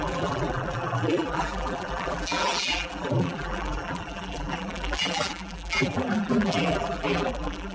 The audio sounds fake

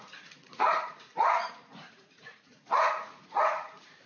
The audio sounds fake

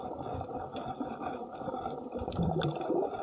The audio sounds real